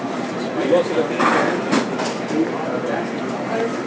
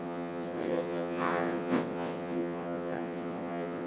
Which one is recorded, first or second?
first